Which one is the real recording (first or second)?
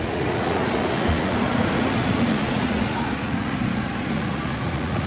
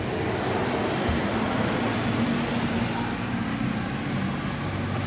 second